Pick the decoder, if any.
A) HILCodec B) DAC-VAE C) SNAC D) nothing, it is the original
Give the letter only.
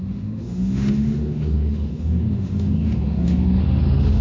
B